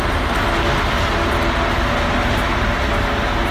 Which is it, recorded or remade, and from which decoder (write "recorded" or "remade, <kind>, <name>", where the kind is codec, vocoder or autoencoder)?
recorded